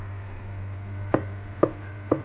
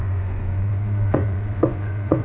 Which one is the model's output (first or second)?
second